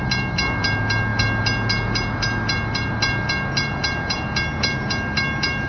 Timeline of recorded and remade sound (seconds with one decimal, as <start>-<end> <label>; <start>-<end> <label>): 0.0-5.7 recorded